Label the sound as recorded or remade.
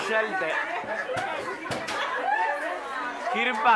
recorded